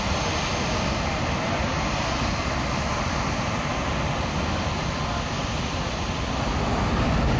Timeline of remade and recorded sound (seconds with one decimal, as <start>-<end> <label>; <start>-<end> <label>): 0.0-7.4 recorded